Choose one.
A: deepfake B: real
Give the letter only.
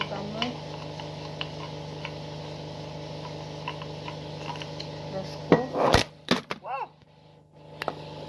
B